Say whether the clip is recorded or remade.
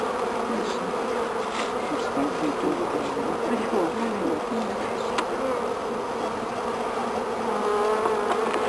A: recorded